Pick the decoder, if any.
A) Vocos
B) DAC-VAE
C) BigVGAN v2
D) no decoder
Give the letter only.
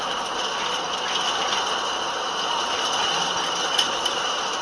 D